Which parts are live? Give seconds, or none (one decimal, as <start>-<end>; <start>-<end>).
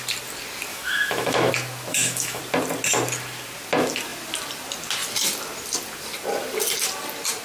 0.0-0.7; 1.5-1.9; 2.4-7.4